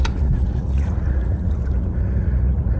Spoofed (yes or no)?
yes